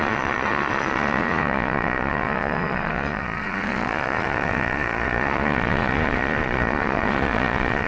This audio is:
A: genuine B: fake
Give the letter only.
B